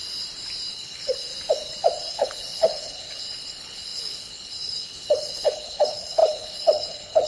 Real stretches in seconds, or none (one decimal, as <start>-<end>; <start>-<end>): 0.0-0.7; 1.3-2.1